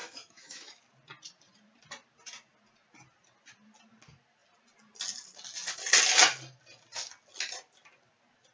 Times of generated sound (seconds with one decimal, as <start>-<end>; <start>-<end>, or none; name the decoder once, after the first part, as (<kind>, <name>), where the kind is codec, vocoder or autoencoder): 0.0-0.8 (autoencoder, DAC-VAE)